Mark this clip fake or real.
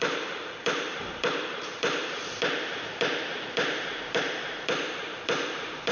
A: fake